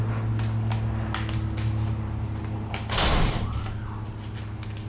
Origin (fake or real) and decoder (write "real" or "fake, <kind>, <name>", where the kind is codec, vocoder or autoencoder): real